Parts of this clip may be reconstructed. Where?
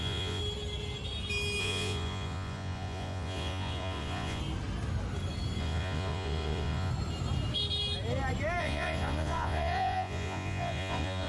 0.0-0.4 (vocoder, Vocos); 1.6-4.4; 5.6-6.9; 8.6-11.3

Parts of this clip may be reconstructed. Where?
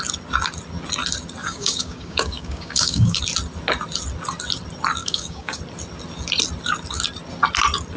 1.4-3.2 (codec, DAC); 5.0-5.6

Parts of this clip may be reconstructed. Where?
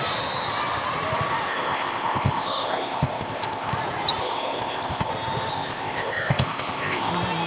1.5-3.7 (codec, ZipCodec); 4.2-5.1; 5.5-7.1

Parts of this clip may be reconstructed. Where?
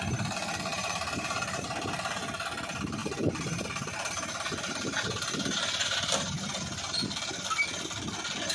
0.7-1.6 (vocoder, BigVGAN v2); 3.0-6.9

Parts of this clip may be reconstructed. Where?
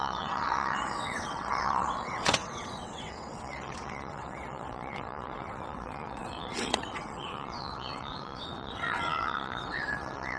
0.0-10.4 (vocoder, WaveNeXt)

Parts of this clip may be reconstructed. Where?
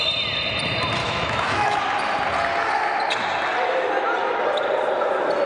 1.0-1.8 (autoencoder, DAC-VAE)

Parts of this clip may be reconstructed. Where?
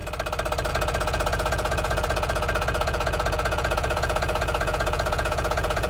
0.7-5.9 (vocoder, Vocos)